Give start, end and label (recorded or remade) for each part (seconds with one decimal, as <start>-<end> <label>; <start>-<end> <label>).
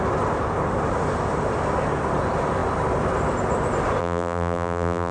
0.0-4.0 recorded; 4.0-5.1 remade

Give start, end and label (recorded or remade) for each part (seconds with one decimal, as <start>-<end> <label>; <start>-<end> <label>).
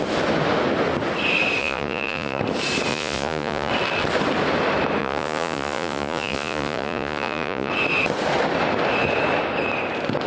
0.0-1.6 recorded; 1.6-2.4 remade; 2.4-2.9 recorded; 2.9-3.7 remade; 3.7-5.0 recorded; 5.0-7.7 remade; 7.7-10.3 recorded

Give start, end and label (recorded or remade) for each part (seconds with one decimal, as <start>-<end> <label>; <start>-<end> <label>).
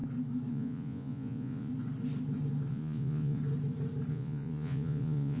0.0-0.5 recorded; 0.5-1.7 remade; 1.7-2.7 recorded; 2.7-3.4 remade; 3.4-4.1 recorded; 4.1-5.4 remade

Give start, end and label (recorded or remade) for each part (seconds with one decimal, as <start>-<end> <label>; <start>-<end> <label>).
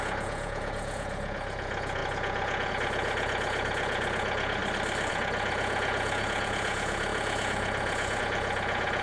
0.0-4.6 remade; 4.6-5.1 recorded; 5.1-9.0 remade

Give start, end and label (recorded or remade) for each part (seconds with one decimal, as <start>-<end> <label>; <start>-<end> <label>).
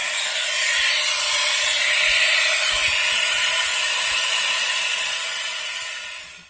0.0-6.5 recorded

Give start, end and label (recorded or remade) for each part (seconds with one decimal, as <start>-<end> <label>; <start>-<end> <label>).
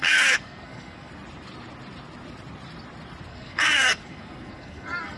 0.0-1.1 remade; 1.1-3.3 recorded; 3.3-5.2 remade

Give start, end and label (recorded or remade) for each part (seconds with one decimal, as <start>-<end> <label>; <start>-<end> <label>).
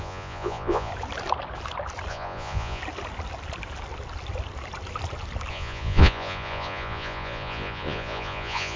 0.0-0.9 remade; 0.9-2.1 recorded; 2.1-2.8 remade; 2.8-5.5 recorded; 5.5-8.8 remade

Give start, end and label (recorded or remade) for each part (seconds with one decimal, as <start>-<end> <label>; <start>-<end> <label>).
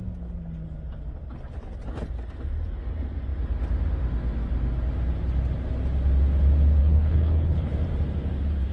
0.0-6.8 recorded; 6.8-7.7 remade; 7.7-8.7 recorded